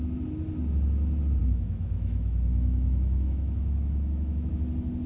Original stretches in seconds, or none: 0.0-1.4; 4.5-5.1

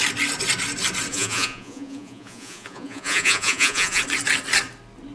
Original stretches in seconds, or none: 0.0-1.1; 4.0-5.1

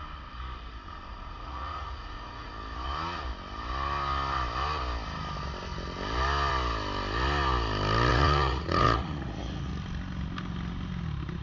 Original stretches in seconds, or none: 0.0-1.1; 2.5-8.1; 9.7-11.4

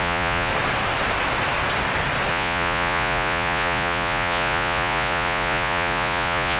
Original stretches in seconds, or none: 0.5-2.3